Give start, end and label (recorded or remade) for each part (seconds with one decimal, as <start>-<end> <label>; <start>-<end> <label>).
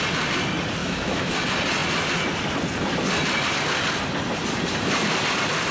0.0-0.8 recorded; 0.8-1.3 remade; 1.3-5.7 recorded